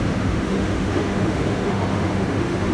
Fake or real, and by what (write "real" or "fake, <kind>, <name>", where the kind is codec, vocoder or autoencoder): fake, autoencoder, DAC-VAE